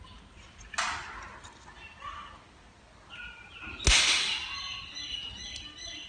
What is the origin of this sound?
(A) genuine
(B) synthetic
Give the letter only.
A